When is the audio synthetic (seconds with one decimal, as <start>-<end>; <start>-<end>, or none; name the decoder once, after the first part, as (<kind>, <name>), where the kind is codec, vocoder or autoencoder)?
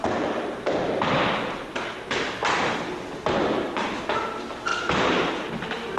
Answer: 0.0-0.8 (vocoder, BigVGAN v2)